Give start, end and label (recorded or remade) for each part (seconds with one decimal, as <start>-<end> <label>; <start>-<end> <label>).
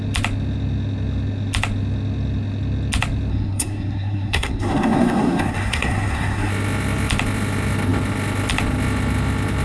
0.0-3.3 recorded; 3.3-6.5 remade; 6.5-9.6 recorded